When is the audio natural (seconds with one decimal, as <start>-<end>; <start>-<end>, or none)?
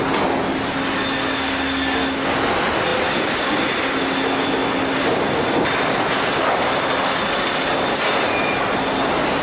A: 0.0-9.4